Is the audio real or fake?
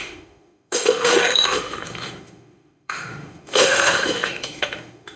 fake